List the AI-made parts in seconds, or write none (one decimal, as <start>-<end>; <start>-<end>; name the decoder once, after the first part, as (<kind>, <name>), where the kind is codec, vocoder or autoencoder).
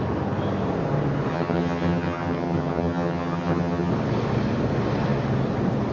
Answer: 1.3-3.9 (vocoder, HiFi-GAN)